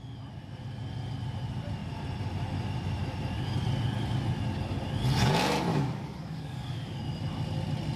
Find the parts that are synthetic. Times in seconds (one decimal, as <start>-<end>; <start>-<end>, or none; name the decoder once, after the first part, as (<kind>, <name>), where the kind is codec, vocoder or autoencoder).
5.7-7.0 (codec, DAC)